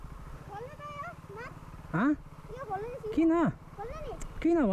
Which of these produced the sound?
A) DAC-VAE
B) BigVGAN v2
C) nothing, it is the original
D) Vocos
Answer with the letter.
C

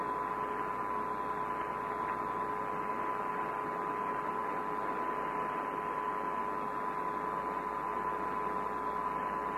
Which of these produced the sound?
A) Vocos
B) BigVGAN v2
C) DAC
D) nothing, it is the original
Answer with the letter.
D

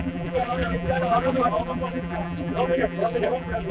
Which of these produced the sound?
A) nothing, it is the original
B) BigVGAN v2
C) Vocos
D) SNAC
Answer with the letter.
B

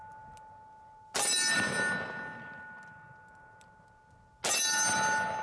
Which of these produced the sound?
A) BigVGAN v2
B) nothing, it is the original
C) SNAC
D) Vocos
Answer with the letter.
B